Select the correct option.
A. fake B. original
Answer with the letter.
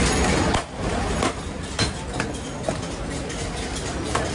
B